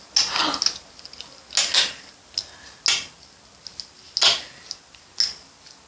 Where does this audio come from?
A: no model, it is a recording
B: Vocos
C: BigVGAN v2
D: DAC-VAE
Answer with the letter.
A